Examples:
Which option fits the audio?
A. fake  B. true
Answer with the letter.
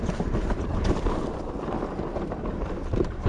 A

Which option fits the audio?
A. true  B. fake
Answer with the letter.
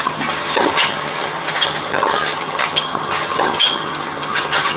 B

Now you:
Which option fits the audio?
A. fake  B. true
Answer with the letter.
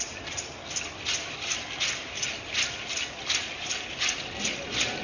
B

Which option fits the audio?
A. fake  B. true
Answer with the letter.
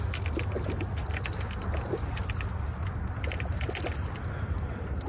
B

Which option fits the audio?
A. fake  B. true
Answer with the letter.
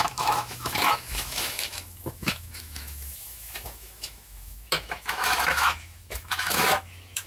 A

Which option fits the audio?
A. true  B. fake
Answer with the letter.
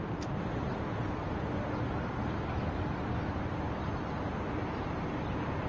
A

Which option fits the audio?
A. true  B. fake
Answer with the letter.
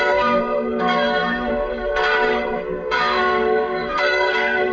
B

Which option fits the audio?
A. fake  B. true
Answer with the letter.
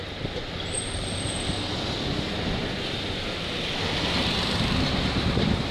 A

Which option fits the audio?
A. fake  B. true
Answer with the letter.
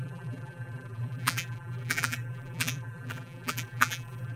A